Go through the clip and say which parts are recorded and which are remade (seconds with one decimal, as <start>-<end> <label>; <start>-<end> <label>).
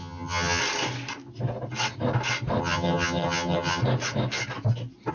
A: 0.0-0.6 remade; 0.6-2.6 recorded; 2.6-3.8 remade; 3.8-5.1 recorded